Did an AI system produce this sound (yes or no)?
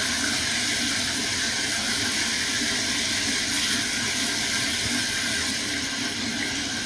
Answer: no